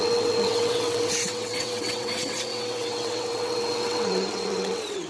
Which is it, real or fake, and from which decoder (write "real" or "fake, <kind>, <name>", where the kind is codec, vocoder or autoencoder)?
fake, vocoder, WaveNeXt